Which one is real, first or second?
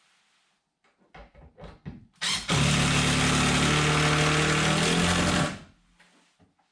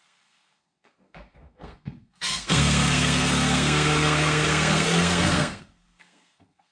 first